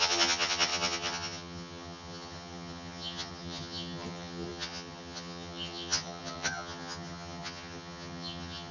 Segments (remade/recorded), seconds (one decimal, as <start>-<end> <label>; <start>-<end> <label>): 0.0-8.7 remade